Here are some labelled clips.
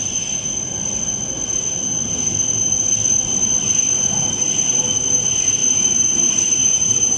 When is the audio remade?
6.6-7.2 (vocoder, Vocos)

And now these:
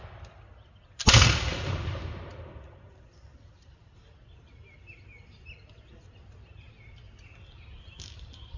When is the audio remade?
none